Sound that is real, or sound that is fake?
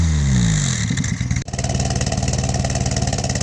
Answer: real